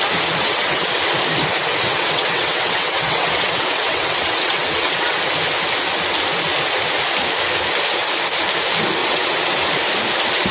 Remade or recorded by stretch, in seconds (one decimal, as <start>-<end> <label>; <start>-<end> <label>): 0.0-0.4 recorded; 0.4-0.9 remade; 0.9-1.7 recorded; 1.7-5.2 remade; 5.2-9.0 recorded; 9.0-9.7 remade; 9.7-10.5 recorded

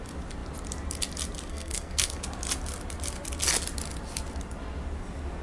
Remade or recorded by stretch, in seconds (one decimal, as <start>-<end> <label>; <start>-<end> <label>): 0.0-1.5 recorded; 1.5-2.2 remade; 2.2-5.4 recorded

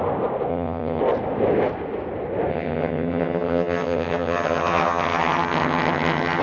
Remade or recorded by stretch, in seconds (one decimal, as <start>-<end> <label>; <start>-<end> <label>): 0.0-0.5 recorded; 0.5-1.0 remade; 1.0-2.5 recorded; 2.5-6.4 remade

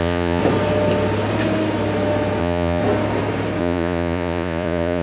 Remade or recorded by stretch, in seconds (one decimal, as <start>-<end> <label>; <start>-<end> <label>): 0.0-0.4 remade; 0.4-2.4 recorded; 2.4-2.8 remade; 2.8-3.6 recorded; 3.6-5.0 remade

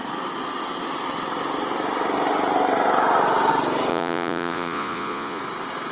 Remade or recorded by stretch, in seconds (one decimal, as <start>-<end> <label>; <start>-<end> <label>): 0.0-3.9 recorded; 3.9-5.4 remade; 5.4-5.9 recorded

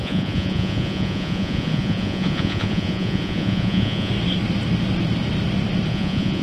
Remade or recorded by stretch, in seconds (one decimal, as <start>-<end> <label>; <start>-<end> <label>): 0.0-4.1 remade; 4.1-5.9 recorded; 5.9-6.4 remade

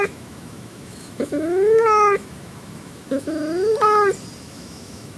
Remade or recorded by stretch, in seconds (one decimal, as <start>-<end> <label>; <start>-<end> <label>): 0.0-3.4 remade; 3.4-4.4 recorded; 4.4-5.2 remade

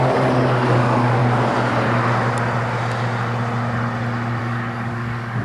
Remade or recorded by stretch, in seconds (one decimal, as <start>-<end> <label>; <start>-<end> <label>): 0.0-1.2 remade; 1.2-4.4 recorded; 4.4-5.4 remade